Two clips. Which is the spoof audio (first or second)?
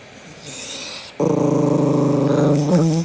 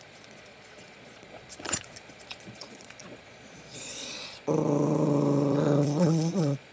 second